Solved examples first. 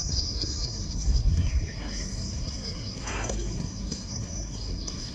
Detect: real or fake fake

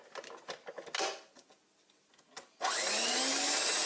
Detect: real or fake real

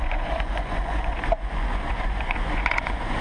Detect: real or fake fake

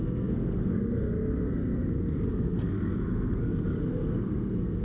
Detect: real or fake fake